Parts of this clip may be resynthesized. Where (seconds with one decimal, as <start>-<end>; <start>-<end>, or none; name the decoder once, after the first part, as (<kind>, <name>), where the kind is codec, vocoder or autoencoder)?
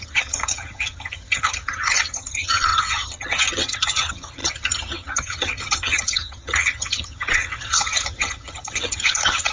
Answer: 0.0-9.5 (vocoder, HiFi-GAN)